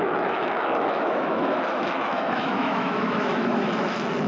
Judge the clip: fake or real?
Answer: fake